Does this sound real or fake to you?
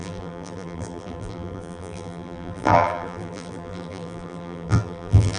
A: fake